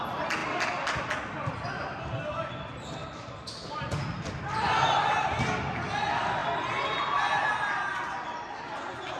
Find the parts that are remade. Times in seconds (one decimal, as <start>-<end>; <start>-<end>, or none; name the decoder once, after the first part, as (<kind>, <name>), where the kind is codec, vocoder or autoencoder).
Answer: none